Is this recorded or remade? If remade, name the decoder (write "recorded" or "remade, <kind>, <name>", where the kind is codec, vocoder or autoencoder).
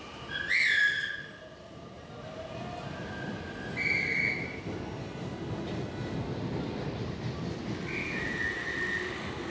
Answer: recorded